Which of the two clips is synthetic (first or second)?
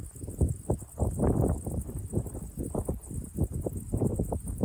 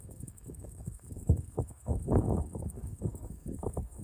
second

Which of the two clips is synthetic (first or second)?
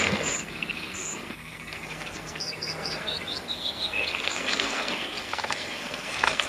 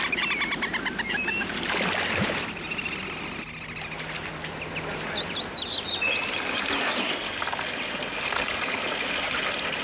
first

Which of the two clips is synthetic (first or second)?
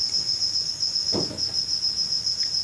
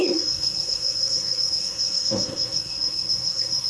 second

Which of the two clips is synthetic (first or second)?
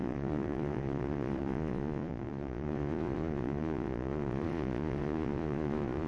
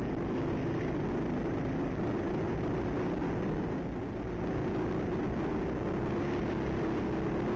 first